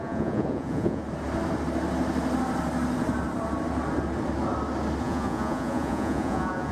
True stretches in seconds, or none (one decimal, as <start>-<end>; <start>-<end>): 1.0-5.0